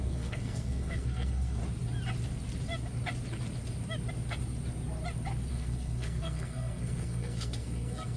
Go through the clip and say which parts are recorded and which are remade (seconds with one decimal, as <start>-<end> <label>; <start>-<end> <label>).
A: 0.0-1.6 remade; 1.6-5.5 recorded; 5.5-8.2 remade